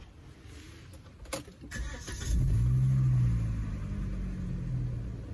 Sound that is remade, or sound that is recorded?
recorded